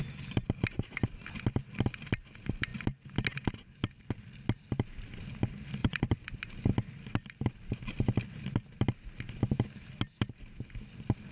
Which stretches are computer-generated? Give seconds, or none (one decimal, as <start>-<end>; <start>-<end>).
5.8-6.3